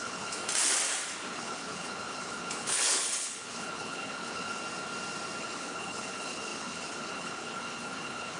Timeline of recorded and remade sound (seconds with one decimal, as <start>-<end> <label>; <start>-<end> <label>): 0.0-0.4 remade; 0.4-1.3 recorded; 1.3-4.6 remade; 4.6-5.4 recorded; 5.4-8.4 remade